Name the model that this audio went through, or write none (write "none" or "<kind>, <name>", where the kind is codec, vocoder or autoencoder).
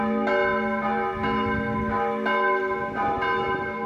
none